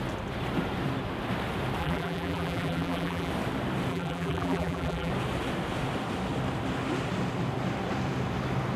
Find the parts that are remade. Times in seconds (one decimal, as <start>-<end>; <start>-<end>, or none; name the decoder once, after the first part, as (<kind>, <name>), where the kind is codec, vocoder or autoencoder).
1.8-3.3 (vocoder, BigVGAN v2); 3.9-5.1